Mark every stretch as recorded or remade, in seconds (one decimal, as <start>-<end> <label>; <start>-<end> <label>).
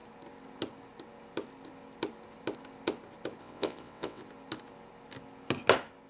0.0-3.4 recorded; 3.4-4.2 remade; 4.2-6.1 recorded